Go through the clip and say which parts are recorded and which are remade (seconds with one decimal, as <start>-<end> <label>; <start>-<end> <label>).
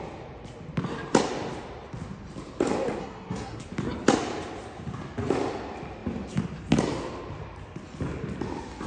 0.0-3.0 recorded; 3.0-3.6 remade; 3.6-8.9 recorded